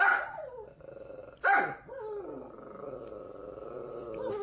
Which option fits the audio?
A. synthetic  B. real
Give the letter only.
B